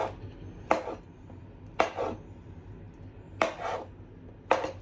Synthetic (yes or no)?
no